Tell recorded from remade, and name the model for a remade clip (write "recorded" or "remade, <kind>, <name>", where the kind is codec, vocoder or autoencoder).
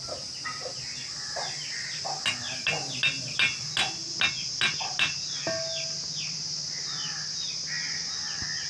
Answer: recorded